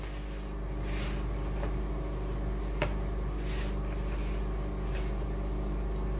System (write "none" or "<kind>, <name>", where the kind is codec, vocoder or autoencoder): none